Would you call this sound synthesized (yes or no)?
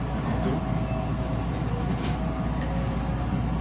no